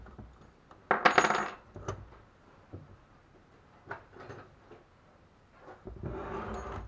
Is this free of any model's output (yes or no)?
yes